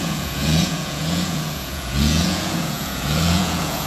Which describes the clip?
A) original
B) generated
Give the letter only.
B